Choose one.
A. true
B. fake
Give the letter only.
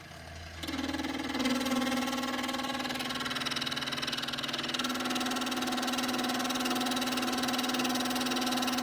A